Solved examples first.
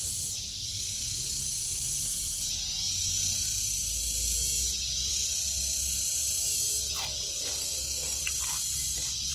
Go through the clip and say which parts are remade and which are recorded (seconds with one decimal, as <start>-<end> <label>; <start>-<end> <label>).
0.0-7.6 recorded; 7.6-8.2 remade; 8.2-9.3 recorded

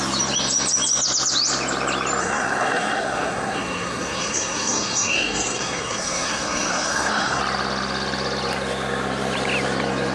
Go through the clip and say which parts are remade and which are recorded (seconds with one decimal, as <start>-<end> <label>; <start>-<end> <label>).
0.0-2.2 recorded; 2.2-7.4 remade; 7.4-10.1 recorded

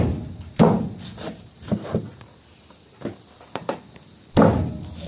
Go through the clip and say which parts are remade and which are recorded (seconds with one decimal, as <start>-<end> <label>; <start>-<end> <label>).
0.0-5.1 recorded